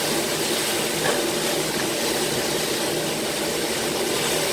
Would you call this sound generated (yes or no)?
no